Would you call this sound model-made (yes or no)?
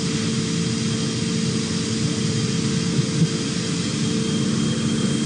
no